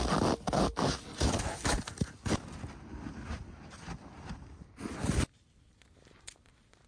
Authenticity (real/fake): real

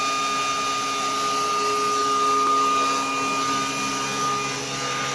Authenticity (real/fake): real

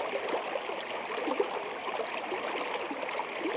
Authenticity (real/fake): real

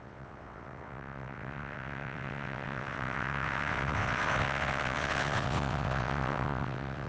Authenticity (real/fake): fake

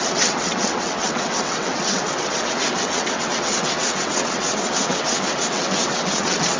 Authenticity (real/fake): fake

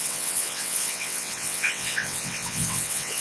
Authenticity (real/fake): fake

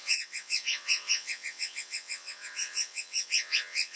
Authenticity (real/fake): fake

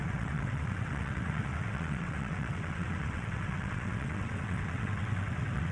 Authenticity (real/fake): fake